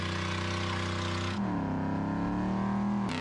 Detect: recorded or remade recorded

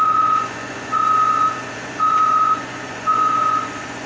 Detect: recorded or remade remade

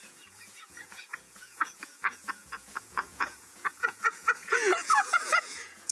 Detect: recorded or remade remade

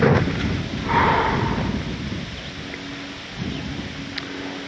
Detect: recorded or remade recorded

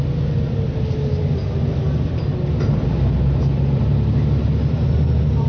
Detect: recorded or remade recorded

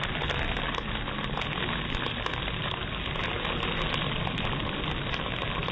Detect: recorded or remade recorded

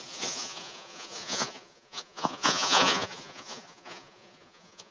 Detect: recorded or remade remade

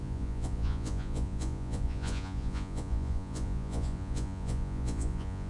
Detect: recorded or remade remade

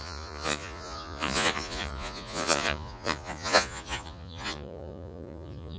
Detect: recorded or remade remade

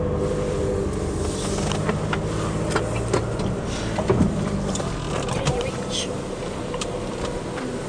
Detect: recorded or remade recorded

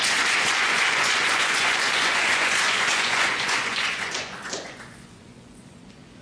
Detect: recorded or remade remade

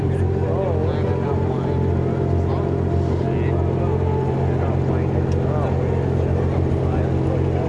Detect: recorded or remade recorded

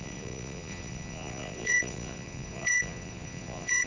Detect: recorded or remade remade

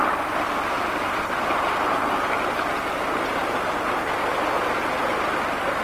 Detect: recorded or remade recorded